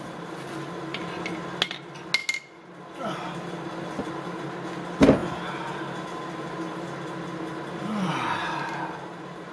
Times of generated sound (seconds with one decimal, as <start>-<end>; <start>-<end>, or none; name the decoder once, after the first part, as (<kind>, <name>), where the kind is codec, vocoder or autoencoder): none